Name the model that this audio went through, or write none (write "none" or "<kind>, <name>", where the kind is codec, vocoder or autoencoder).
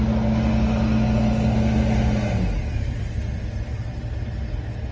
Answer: none